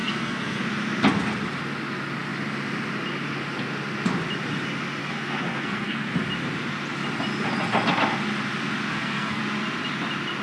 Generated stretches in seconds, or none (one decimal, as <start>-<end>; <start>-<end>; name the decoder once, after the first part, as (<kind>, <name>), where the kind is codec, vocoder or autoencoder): 0.0-0.6 (codec, SNAC); 5.0-6.1; 8.9-9.4